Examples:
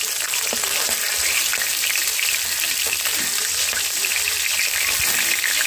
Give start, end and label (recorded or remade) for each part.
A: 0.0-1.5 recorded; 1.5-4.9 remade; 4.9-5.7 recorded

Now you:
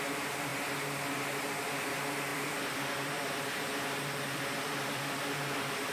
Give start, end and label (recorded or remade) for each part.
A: 0.0-0.5 remade; 0.5-1.6 recorded; 1.6-5.9 remade

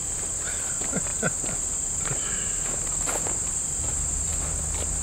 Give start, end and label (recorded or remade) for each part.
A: 0.0-5.0 recorded